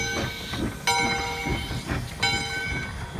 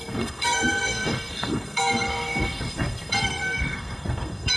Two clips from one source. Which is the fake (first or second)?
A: second